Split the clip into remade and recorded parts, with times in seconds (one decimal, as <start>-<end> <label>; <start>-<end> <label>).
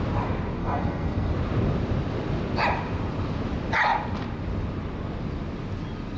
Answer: 0.0-0.6 recorded; 0.6-1.3 remade; 1.3-6.2 recorded